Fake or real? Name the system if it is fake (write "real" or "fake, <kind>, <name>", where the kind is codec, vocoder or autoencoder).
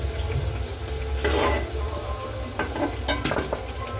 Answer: real